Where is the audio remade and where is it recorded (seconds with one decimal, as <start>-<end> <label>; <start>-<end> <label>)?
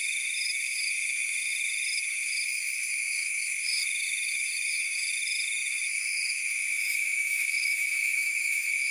0.0-8.9 remade